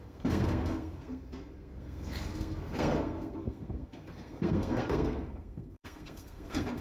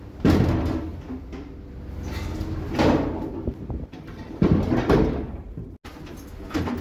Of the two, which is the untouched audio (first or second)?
second